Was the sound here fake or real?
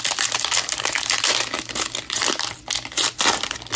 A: real